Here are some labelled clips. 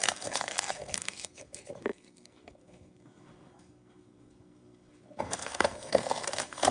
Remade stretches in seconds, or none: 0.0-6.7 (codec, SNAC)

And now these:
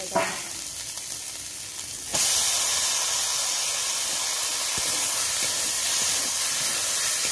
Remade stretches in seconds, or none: none

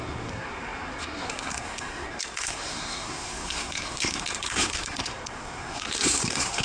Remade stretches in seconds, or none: 0.0-6.6 (codec, SNAC)

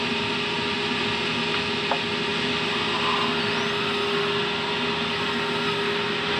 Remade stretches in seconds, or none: none